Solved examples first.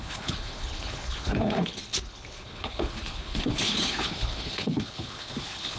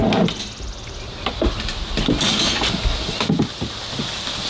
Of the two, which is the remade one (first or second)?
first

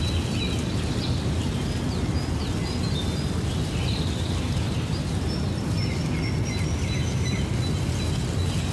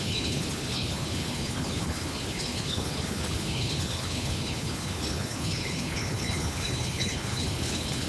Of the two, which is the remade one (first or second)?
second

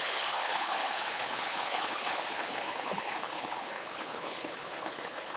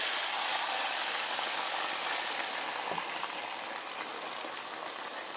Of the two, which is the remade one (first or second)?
first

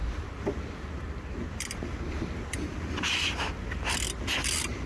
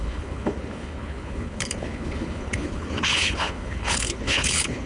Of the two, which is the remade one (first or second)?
second